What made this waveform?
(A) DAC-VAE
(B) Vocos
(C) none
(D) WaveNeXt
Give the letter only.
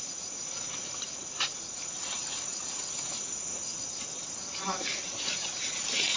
B